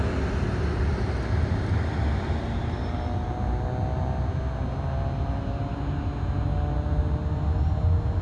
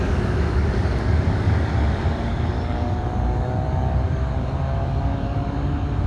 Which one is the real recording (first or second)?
first